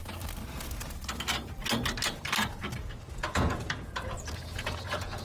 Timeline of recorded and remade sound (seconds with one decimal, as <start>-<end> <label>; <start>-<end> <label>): 0.0-3.1 recorded; 3.1-5.2 remade